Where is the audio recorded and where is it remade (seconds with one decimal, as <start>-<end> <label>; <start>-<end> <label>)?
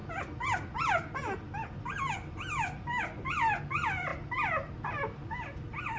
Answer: 0.0-6.0 recorded